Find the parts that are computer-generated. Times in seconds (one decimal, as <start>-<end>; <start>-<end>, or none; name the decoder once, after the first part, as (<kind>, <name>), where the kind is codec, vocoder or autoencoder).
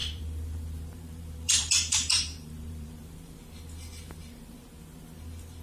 0.0-3.4 (vocoder, BigVGAN v2)